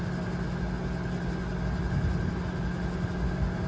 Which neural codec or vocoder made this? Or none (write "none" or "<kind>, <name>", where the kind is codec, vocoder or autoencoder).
none